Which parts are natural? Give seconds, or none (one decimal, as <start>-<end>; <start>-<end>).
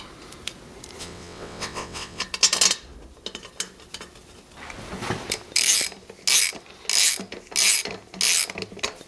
0.0-1.0; 2.2-9.1